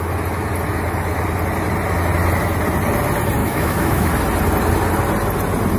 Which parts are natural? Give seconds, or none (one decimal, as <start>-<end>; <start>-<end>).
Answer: 0.0-3.4; 4.1-5.8